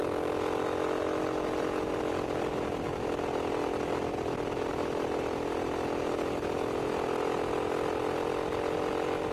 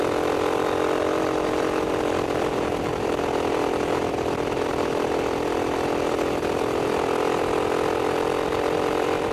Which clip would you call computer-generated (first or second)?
second